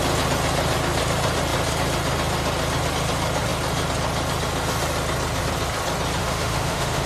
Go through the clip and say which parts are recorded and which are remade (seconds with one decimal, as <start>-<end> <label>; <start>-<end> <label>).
0.0-6.2 recorded; 6.2-7.1 remade